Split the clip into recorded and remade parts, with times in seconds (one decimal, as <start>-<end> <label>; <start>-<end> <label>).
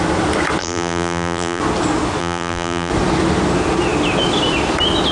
0.0-0.6 recorded; 0.6-1.6 remade; 1.6-2.2 recorded; 2.2-2.9 remade; 2.9-5.1 recorded